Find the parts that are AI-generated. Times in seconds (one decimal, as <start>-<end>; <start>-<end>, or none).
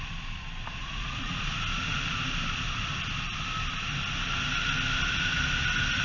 0.8-1.4